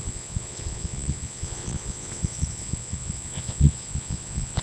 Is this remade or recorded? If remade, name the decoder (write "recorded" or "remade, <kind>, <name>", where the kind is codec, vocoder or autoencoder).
remade, vocoder, Vocos